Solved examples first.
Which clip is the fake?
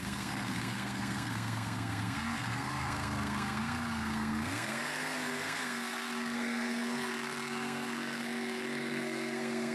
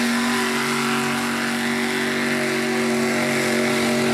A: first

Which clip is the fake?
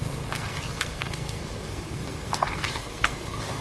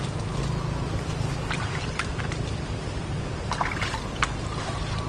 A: first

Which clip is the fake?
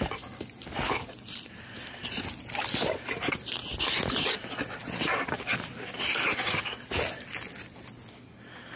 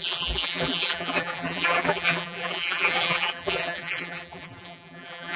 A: second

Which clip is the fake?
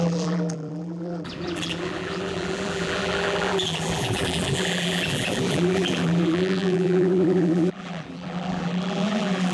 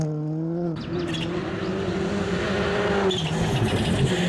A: first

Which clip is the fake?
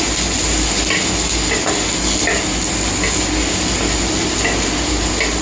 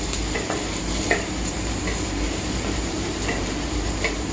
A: second